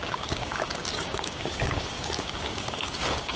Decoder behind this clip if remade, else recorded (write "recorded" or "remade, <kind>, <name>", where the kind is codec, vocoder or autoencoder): remade, codec, DAC